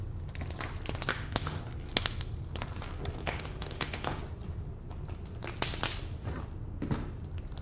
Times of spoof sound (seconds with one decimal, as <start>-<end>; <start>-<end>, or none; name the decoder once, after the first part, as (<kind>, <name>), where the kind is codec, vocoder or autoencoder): 1.1-1.6 (autoencoder, DAC-VAE); 3.2-4.2